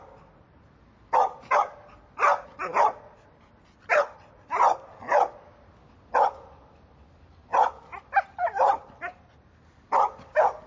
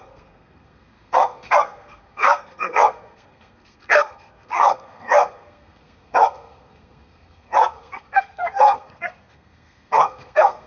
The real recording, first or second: first